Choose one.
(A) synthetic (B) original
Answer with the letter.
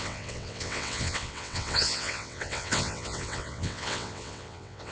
A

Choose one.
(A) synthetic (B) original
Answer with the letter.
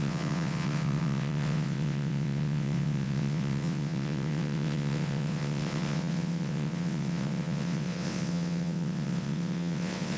A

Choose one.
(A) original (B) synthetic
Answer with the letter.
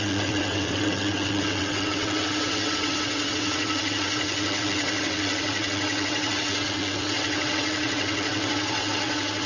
B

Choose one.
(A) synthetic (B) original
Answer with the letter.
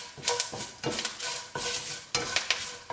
B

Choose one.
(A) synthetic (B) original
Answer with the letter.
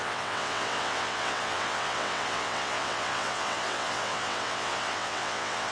A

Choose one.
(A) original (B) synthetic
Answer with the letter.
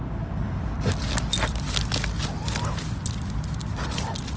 A